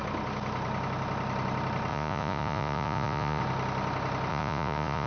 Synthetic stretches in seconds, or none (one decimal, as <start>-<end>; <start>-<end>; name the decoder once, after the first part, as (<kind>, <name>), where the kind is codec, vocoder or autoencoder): 1.9-3.4 (vocoder, Vocos); 4.3-5.1